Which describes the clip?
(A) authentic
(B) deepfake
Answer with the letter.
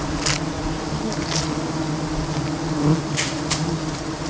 A